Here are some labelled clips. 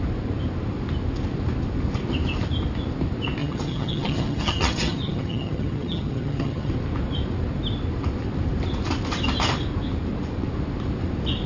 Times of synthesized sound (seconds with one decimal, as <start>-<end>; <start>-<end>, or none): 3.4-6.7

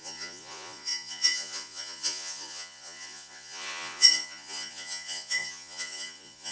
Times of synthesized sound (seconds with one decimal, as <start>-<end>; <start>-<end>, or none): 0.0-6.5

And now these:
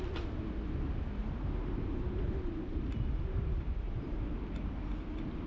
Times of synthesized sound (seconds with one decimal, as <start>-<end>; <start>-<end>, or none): 1.2-4.2